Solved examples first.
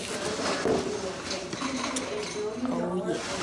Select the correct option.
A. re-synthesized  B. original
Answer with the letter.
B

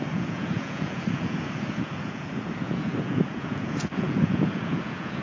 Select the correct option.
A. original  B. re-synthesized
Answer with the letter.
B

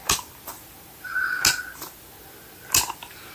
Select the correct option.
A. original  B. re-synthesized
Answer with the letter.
A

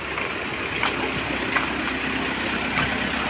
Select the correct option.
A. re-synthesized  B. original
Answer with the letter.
B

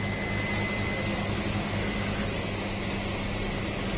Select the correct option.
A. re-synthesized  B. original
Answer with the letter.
B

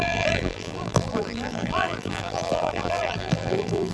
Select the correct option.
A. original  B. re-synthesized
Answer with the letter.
B